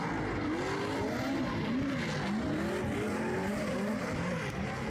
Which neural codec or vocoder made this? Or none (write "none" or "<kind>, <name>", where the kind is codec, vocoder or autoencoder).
none